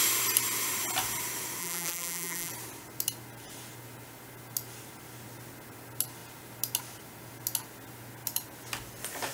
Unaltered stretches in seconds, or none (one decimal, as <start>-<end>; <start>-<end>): 0.0-1.6; 2.5-9.3